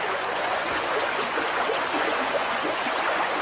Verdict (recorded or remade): remade